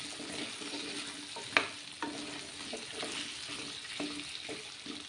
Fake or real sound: real